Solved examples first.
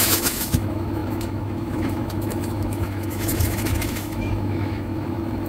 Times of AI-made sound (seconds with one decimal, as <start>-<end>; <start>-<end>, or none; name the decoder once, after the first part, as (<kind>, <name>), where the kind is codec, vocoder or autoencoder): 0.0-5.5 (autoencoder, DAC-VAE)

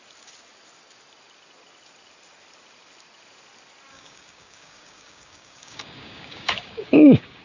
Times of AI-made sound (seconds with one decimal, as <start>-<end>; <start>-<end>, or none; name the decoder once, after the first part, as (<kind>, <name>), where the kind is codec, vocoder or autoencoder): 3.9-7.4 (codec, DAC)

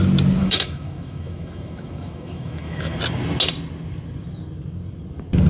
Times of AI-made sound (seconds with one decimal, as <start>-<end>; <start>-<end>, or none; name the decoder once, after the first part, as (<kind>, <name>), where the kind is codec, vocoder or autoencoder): 0.4-3.0 (autoencoder, DAC-VAE)

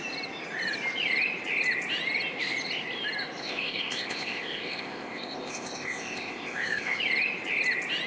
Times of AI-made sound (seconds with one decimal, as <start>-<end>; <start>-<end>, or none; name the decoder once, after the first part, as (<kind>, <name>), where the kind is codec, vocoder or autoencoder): 3.4-7.0 (codec, ZipCodec)

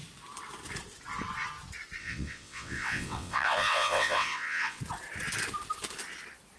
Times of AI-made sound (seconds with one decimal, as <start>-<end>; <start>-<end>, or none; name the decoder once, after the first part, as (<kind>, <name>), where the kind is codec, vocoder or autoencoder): 2.0-4.8 (vocoder, WaveNeXt)

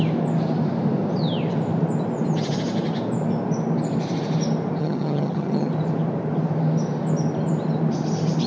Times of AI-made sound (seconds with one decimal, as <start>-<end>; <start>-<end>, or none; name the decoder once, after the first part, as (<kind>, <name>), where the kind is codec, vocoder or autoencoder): 4.8-5.7 (vocoder, HiFi-GAN)

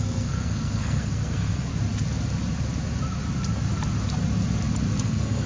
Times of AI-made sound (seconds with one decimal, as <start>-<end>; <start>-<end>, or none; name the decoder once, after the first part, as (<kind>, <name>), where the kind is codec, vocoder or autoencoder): 0.0-1.7 (codec, SNAC); 5.0-5.5